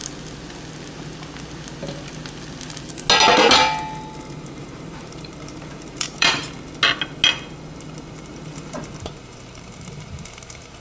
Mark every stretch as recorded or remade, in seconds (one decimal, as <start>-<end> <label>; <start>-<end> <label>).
0.0-4.4 recorded; 4.4-6.4 remade; 6.4-8.3 recorded; 8.3-10.8 remade